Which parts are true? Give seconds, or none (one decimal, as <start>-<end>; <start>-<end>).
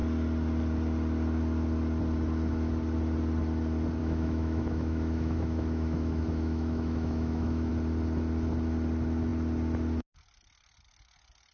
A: 0.0-4.0; 7.7-11.5